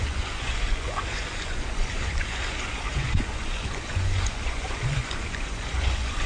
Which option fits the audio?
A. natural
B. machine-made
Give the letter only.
B